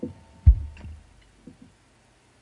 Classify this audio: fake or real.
real